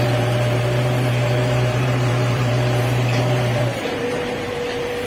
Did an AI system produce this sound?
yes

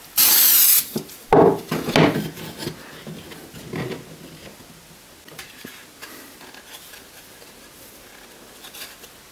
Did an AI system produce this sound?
no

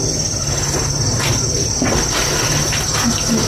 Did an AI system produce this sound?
no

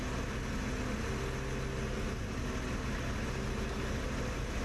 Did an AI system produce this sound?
no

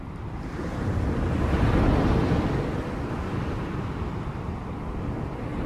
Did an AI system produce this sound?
no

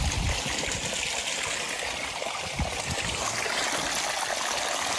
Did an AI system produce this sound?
no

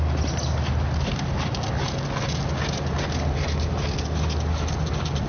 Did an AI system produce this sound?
no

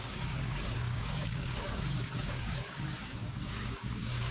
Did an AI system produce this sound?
yes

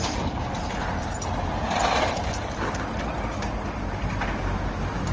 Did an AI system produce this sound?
no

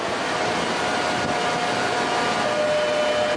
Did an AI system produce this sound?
no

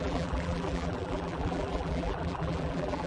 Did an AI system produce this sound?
yes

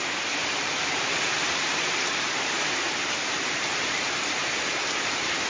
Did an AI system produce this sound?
yes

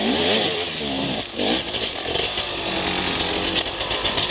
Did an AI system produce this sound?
no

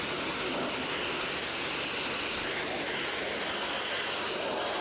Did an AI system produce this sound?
no